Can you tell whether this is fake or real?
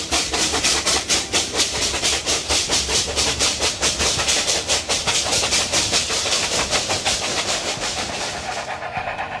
fake